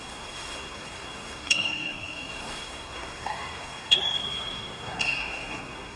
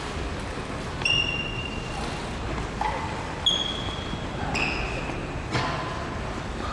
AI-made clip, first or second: first